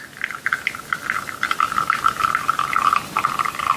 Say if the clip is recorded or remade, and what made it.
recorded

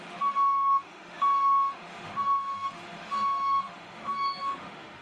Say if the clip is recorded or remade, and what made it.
remade, autoencoder, DAC-VAE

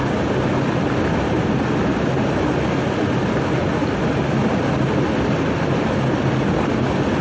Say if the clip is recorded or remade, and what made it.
recorded